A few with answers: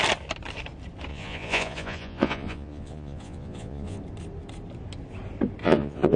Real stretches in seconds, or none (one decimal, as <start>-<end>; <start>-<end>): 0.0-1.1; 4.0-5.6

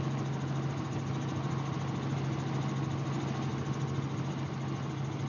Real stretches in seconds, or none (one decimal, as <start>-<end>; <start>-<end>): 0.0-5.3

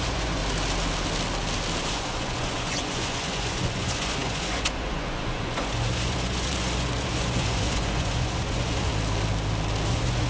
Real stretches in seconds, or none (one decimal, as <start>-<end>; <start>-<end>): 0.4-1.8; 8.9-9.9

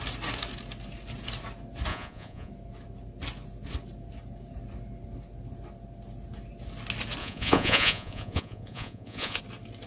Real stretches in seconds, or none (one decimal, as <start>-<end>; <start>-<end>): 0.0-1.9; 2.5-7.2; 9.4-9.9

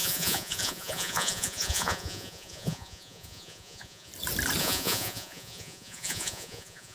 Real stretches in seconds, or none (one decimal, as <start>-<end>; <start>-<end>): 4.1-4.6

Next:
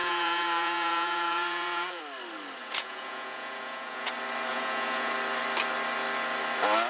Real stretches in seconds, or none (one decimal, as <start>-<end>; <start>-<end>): 2.0-2.6; 4.1-4.5; 5.1-6.9

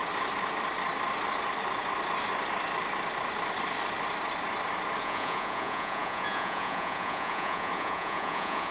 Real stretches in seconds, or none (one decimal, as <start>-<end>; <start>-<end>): 0.0-5.0